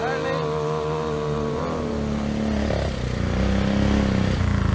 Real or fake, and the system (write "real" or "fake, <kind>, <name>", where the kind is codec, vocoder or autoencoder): real